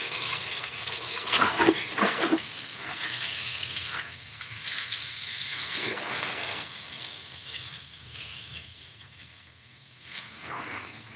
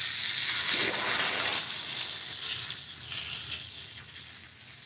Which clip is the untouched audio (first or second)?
second